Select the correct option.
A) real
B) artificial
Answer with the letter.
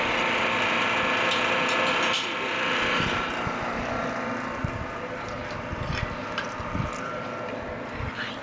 A